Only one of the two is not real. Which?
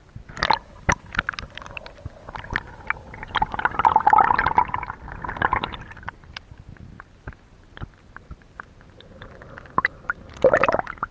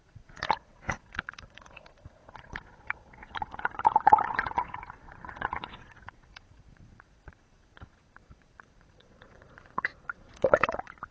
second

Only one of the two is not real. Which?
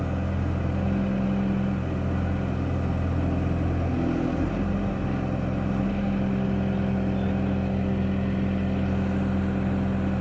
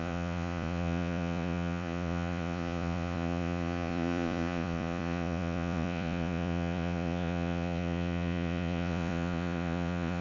second